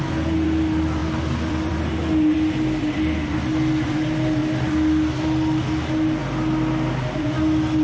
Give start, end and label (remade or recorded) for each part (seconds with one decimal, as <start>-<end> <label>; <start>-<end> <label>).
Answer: 0.0-1.0 recorded; 1.0-1.8 remade; 1.8-7.8 recorded

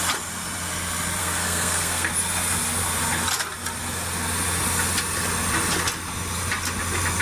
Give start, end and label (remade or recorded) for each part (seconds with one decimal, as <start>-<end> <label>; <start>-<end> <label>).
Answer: 0.0-1.2 recorded; 1.2-2.1 remade; 2.1-7.2 recorded

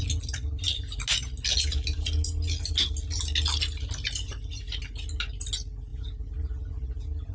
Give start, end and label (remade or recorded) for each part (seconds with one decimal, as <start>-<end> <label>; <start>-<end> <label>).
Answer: 0.0-7.3 recorded